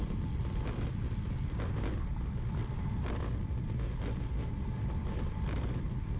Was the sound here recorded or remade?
recorded